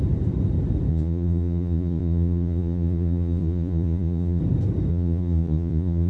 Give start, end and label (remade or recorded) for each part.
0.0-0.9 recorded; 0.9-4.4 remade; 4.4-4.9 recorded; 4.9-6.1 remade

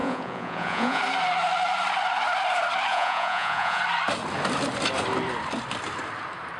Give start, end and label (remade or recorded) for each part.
0.0-1.0 remade; 1.0-2.9 recorded; 2.9-3.8 remade; 3.8-6.6 recorded

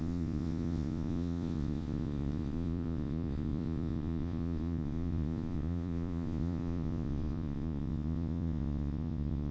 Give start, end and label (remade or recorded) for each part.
0.0-9.5 remade

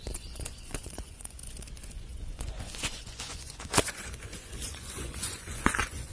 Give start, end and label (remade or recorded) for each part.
0.0-6.1 remade

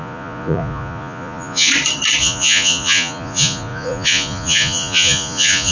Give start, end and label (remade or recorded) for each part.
0.0-1.7 remade; 1.7-2.2 recorded; 2.2-5.7 remade